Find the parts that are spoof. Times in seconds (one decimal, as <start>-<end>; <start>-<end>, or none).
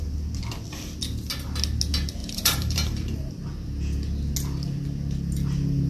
2.2-3.3